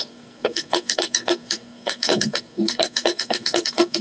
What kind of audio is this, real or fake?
fake